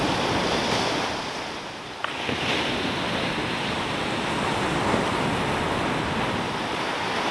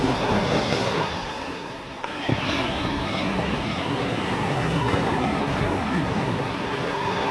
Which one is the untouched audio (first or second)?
first